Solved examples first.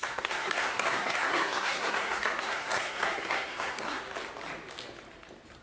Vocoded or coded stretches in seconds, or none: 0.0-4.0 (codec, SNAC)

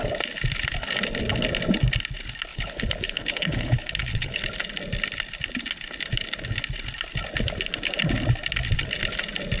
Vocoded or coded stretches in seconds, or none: 2.5-4.4 (codec, HILCodec)

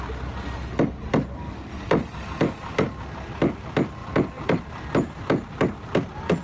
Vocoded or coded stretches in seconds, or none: none

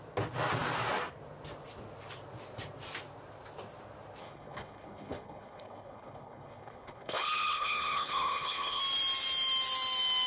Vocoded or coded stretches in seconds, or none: 4.2-8.8 (codec, HILCodec)

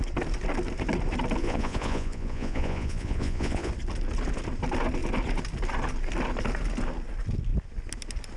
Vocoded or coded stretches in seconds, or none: 1.4-3.7 (vocoder, Vocos)

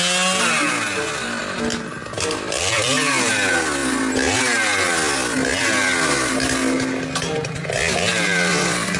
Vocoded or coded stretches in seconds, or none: 1.4-3.3 (vocoder, BigVGAN v2); 5.5-6.3; 8.1-9.0

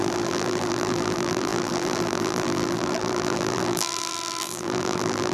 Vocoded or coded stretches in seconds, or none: 0.0-5.3 (vocoder, BigVGAN v2)